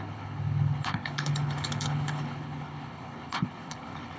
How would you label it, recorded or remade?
remade